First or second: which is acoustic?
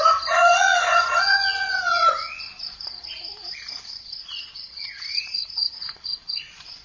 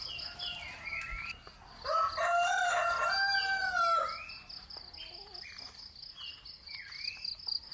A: second